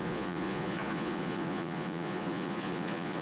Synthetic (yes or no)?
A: yes